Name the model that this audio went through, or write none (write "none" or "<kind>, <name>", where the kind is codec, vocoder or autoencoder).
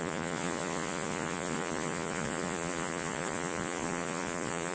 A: vocoder, Vocos